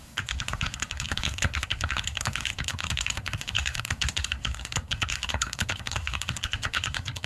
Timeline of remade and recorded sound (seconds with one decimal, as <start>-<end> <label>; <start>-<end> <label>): 0.0-7.3 remade